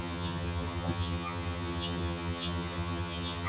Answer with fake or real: fake